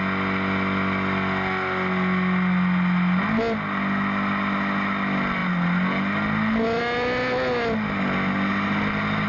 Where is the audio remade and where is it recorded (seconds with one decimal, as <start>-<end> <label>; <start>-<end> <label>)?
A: 0.0-9.3 recorded